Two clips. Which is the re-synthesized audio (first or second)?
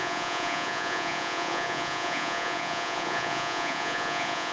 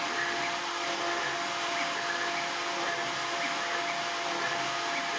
first